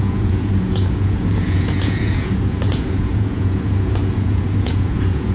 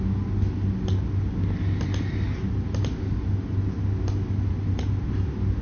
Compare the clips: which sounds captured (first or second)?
second